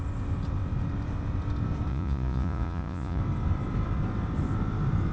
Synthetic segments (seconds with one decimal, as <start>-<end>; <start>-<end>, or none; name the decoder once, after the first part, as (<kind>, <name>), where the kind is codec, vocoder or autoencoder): 1.9-3.2 (vocoder, Vocos)